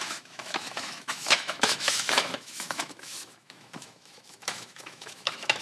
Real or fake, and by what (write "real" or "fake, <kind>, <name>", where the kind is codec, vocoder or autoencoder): fake, autoencoder, DAC-VAE